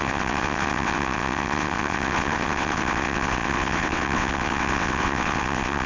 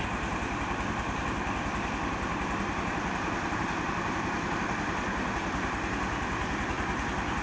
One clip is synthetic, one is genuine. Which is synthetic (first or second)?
first